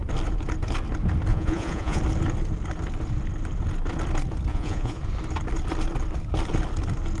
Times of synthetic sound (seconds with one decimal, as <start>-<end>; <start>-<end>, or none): 1.3-2.0; 4.5-5.0